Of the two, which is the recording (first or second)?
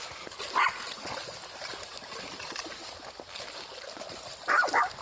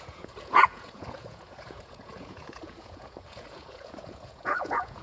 first